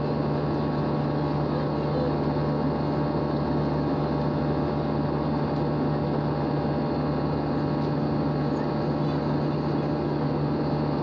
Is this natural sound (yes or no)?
yes